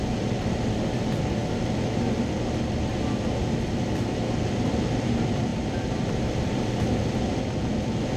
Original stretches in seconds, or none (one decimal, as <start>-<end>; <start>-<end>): 0.0-5.5; 7.6-8.2